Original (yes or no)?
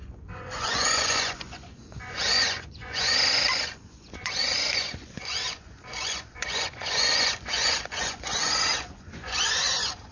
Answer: no